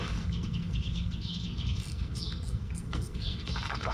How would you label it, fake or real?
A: fake